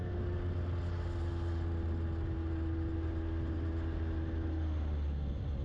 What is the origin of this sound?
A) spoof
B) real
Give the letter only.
B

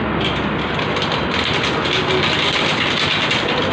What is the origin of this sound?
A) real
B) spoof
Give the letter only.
A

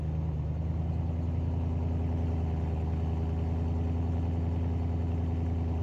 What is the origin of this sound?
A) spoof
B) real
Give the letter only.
B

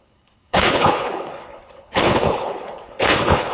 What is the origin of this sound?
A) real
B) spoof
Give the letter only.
B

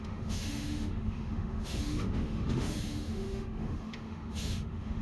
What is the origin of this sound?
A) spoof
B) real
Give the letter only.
A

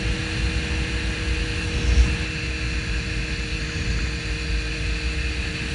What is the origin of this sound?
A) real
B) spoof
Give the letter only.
A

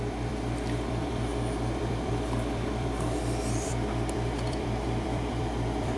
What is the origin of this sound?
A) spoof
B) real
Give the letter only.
A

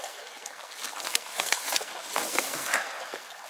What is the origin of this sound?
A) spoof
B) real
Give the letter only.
A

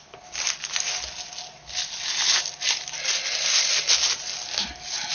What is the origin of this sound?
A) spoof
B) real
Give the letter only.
B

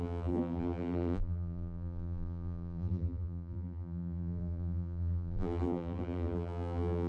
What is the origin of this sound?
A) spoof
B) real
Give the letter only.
A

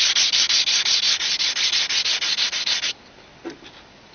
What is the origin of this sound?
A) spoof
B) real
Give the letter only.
B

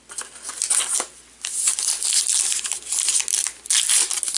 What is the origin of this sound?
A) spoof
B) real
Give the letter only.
B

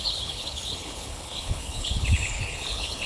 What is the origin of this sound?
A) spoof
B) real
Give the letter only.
A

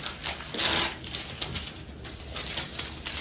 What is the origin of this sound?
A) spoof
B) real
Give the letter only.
B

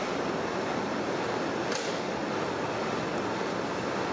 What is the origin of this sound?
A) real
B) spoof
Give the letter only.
A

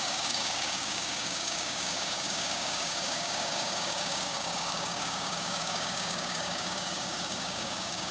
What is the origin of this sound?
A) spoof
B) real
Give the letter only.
A